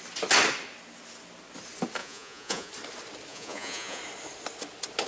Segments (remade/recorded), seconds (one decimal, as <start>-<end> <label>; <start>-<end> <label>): 0.0-2.0 recorded; 2.0-2.7 remade; 2.7-3.3 recorded; 3.3-4.0 remade; 4.0-5.1 recorded